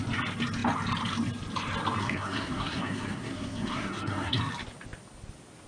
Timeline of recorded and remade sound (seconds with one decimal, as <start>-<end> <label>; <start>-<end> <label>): 0.0-2.0 recorded; 2.0-4.4 remade; 4.4-5.7 recorded